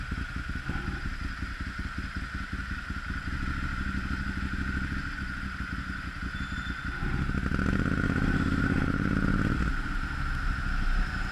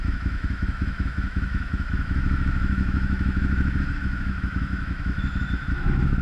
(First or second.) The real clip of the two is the first